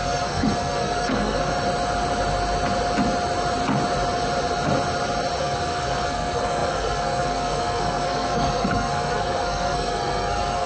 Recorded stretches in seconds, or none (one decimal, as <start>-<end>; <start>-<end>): 1.5-5.4

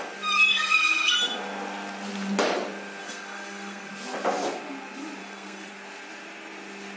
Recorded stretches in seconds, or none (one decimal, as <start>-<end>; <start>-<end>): 0.0-0.5; 1.1-3.0; 3.9-5.2; 5.7-7.0